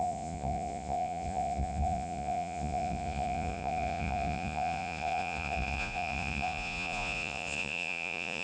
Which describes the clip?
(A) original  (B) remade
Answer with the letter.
B